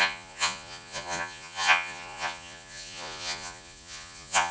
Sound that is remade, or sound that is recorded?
remade